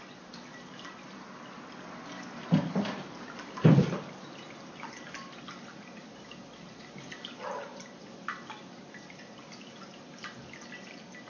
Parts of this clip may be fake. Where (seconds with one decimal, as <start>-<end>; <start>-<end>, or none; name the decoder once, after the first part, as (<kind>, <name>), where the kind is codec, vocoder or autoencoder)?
none